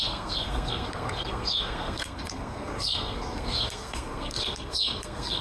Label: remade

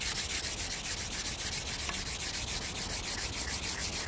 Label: recorded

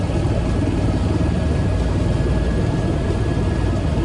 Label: recorded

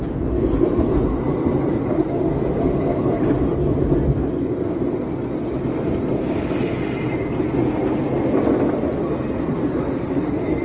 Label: recorded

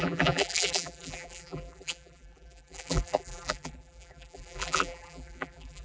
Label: remade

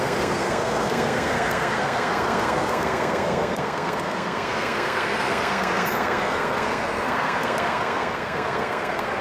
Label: remade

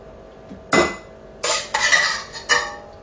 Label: recorded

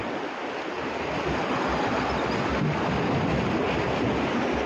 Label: recorded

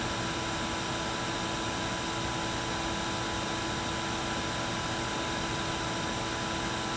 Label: recorded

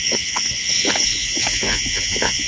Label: remade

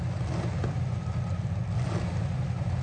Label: recorded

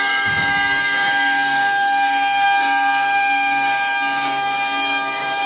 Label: remade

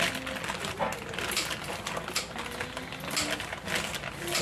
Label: recorded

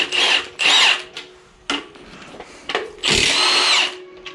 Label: recorded